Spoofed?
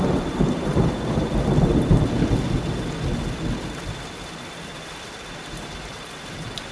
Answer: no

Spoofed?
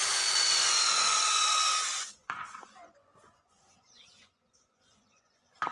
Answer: yes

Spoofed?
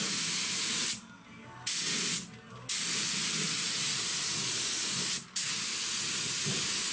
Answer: no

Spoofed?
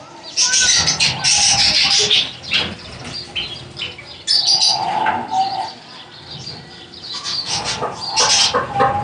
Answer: no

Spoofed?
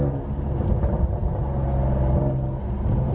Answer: no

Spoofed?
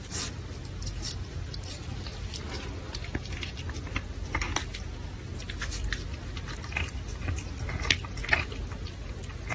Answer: no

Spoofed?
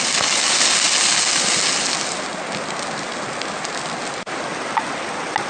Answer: no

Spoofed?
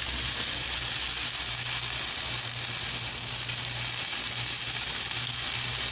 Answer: no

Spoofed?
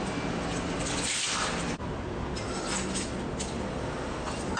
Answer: no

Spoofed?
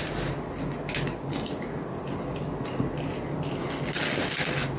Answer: no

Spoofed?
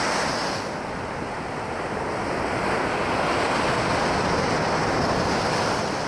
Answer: no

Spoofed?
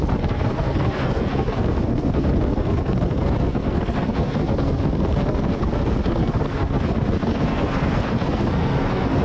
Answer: yes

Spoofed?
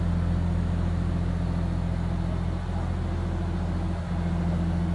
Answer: no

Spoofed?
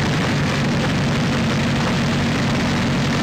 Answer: yes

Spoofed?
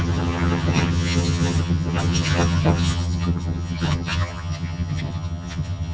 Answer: yes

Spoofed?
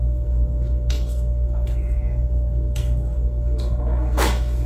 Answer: yes